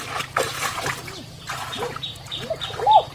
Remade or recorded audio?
recorded